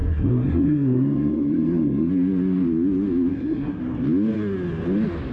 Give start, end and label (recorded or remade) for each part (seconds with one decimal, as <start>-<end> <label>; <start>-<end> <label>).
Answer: 0.0-2.1 remade; 2.1-3.3 recorded; 3.3-3.8 remade; 3.8-5.3 recorded

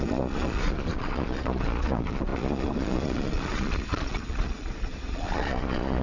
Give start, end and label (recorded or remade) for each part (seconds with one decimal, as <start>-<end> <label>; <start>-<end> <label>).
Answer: 0.0-6.0 remade

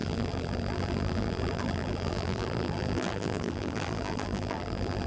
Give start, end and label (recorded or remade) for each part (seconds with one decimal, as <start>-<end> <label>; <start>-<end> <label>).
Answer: 0.0-5.1 remade

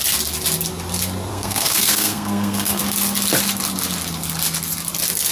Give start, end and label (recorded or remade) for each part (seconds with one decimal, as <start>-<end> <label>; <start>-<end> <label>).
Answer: 0.0-1.3 recorded; 1.3-2.8 remade; 2.8-5.3 recorded

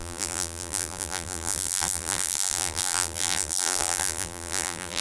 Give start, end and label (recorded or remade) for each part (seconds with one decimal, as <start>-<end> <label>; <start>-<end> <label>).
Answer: 0.0-5.0 remade